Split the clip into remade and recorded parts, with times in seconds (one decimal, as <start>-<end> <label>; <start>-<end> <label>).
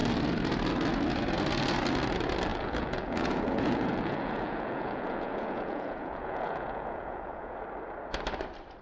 0.0-2.5 recorded; 2.5-7.6 remade; 7.6-8.8 recorded